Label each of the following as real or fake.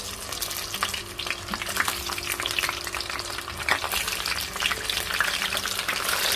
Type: real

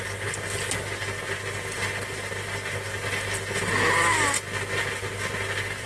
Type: real